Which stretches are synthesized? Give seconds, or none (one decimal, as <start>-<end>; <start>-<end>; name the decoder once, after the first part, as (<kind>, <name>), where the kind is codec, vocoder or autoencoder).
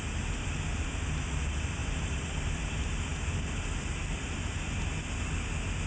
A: 0.7-1.3 (vocoder, BigVGAN v2); 1.8-2.7; 3.1-3.6